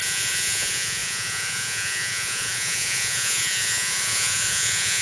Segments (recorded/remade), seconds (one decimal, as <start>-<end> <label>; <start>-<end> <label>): 0.0-5.0 remade